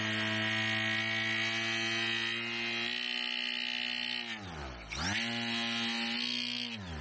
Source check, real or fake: real